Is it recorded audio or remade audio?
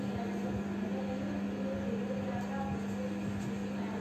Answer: recorded